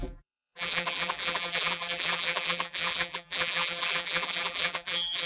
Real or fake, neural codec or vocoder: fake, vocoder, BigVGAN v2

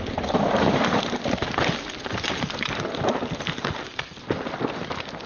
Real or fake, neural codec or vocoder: real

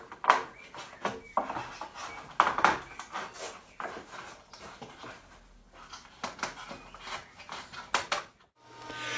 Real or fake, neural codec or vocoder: real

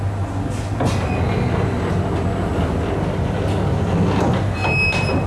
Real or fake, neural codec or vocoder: real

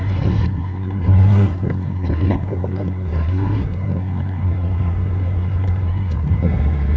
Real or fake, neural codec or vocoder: fake, codec, SNAC